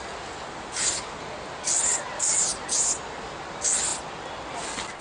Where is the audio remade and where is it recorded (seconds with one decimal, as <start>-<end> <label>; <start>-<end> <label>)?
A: 0.0-5.0 recorded